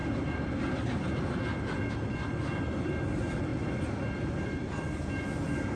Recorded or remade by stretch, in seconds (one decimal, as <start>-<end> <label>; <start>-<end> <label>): 0.0-5.8 recorded

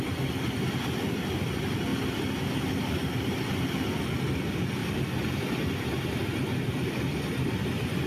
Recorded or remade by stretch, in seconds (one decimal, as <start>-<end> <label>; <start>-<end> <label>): 0.0-1.9 recorded; 1.9-4.2 remade; 4.2-4.8 recorded; 4.8-8.1 remade

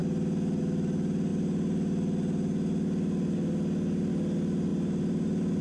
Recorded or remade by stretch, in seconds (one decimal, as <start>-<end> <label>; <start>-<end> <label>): 0.0-4.7 recorded; 4.7-5.6 remade

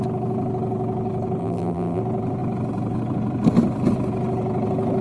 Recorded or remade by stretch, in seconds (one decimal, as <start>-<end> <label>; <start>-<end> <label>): 0.0-1.4 recorded; 1.4-2.0 remade; 2.0-5.0 recorded

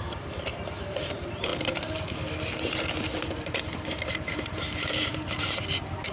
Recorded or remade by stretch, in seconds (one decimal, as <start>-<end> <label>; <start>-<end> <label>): 0.0-1.5 remade; 1.5-3.6 recorded; 3.6-6.1 remade

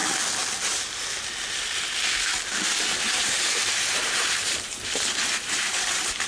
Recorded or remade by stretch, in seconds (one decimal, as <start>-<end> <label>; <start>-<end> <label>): 0.0-2.9 recorded; 2.9-6.3 remade

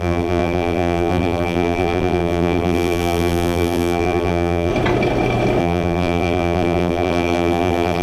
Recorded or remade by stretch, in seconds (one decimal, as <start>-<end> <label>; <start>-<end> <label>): 0.0-4.7 remade; 4.7-5.6 recorded; 5.6-8.0 remade

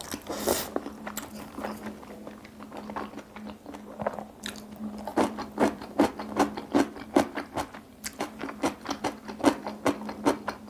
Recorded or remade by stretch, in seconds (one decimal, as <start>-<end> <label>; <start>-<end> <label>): 0.0-5.1 recorded; 5.1-6.1 remade; 6.1-7.9 recorded; 7.9-9.0 remade; 9.0-10.7 recorded